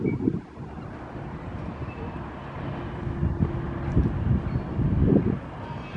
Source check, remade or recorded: recorded